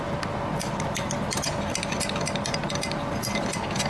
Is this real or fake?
real